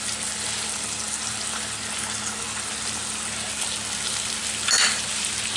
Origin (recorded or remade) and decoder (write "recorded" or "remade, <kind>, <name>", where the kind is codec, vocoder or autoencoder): recorded